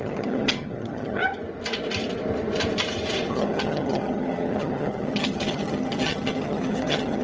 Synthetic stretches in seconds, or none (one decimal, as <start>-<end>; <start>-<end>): 0.0-1.2; 3.3-7.2